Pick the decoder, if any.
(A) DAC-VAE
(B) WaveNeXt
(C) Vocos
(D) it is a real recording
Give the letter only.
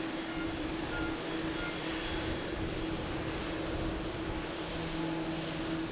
D